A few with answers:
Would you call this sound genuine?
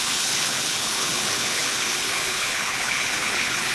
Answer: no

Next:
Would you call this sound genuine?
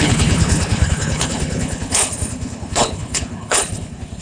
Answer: no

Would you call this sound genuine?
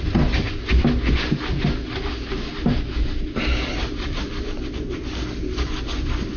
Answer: yes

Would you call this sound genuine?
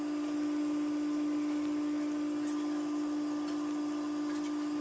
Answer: yes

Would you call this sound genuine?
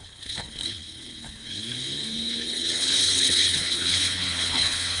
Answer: no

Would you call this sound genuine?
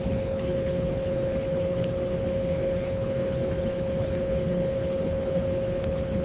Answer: no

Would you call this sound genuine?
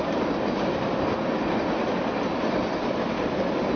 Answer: yes